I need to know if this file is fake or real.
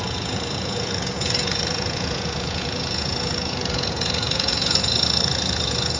fake